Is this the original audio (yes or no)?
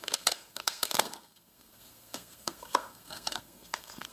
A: no